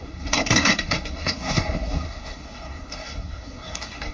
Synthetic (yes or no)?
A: yes